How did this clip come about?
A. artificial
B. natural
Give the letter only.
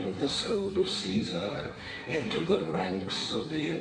A